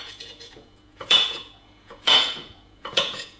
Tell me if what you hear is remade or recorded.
remade